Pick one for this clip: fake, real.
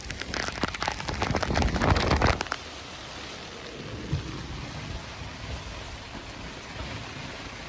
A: real